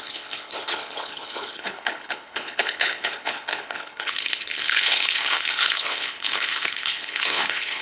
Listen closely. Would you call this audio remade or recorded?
remade